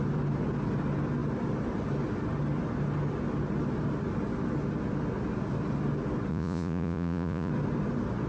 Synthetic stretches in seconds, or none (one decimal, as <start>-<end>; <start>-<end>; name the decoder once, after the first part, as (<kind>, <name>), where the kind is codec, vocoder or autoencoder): 6.3-7.5 (vocoder, Vocos)

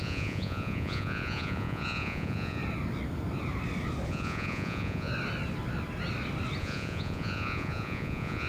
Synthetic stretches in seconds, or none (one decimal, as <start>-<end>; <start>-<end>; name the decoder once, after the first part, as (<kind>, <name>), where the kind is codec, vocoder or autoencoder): 0.0-2.6 (vocoder, Vocos); 4.1-5.1; 6.6-8.5

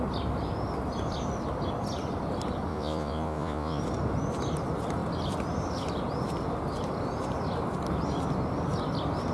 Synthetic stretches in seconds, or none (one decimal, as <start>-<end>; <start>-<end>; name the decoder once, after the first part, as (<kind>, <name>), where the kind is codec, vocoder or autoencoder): 2.7-3.8 (vocoder, Vocos)

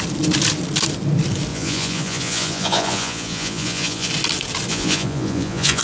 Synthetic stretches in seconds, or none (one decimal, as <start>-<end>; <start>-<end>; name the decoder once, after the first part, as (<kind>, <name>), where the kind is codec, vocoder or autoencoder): 1.5-4.1 (vocoder, Vocos); 4.7-5.8

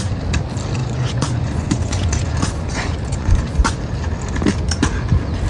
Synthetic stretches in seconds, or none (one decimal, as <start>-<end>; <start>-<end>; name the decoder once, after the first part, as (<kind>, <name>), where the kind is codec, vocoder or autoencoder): 0.8-3.8 (vocoder, Vocos)